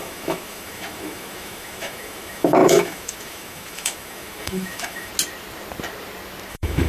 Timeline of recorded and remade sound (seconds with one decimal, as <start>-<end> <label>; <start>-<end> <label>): 0.0-5.1 remade; 5.1-6.5 recorded; 6.5-6.9 remade

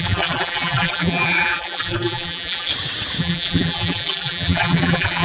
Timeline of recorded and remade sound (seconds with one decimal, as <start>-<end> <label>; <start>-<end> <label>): 0.0-2.7 remade; 2.7-3.2 recorded; 3.2-5.2 remade

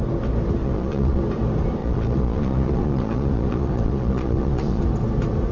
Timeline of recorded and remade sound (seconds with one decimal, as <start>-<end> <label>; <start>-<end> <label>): 0.0-0.6 recorded; 0.6-1.2 remade; 1.2-1.8 recorded; 1.8-4.8 remade; 4.8-5.5 recorded

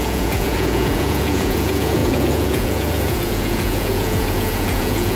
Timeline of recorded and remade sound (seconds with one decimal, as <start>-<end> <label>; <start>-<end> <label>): 0.0-5.2 remade

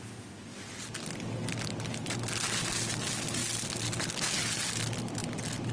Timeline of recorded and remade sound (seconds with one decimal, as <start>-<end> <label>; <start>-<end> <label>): 0.0-5.7 recorded

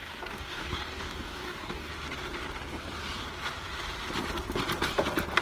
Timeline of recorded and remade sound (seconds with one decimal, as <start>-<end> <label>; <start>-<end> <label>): 0.0-1.9 remade; 1.9-5.4 recorded